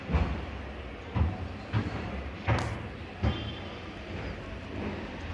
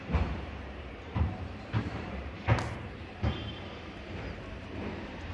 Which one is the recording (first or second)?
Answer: first